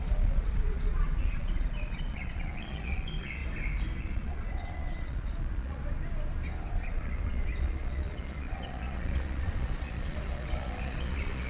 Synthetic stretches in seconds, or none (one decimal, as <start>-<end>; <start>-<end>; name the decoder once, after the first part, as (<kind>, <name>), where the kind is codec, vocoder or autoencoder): 0.0-3.4 (vocoder, Vocos); 4.0-5.8; 6.7-11.5